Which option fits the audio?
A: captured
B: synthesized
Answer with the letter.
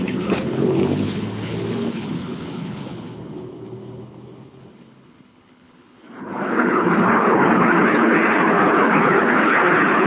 B